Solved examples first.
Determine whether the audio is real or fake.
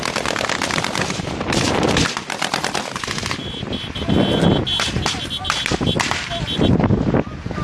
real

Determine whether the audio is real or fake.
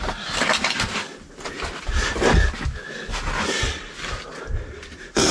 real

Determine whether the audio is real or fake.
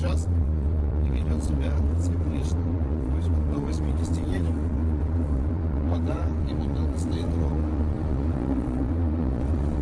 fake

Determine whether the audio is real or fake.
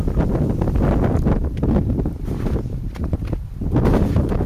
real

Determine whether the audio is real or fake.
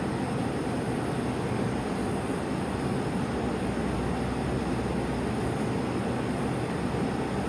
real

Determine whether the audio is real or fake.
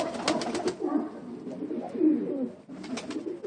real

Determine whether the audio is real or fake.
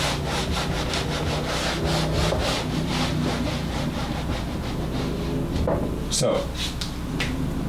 real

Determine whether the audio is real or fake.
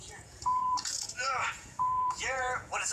fake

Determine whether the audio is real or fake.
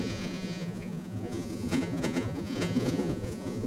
fake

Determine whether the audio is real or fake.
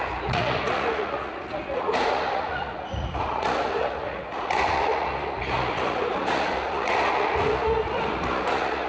fake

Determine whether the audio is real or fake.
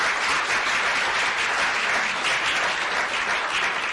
real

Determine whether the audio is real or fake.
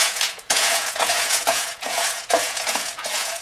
fake